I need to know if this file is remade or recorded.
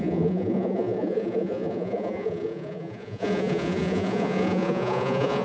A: remade